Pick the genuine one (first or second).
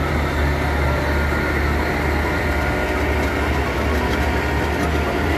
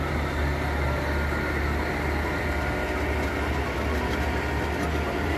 first